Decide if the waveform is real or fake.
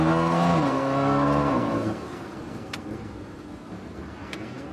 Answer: fake